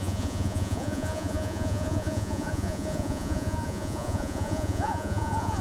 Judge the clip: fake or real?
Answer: fake